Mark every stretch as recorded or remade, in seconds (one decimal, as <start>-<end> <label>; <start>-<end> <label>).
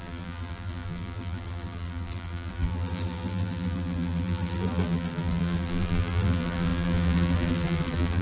0.0-8.2 remade